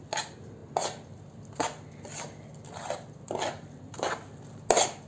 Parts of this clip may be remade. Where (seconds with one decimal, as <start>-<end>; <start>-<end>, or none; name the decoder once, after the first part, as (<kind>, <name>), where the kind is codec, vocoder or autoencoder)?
none